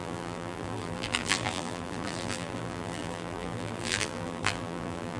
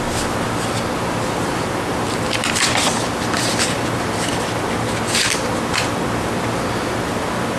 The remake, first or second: first